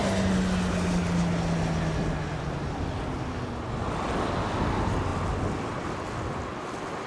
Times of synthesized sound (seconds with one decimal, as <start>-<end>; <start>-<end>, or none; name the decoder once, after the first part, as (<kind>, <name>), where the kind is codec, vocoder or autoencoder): none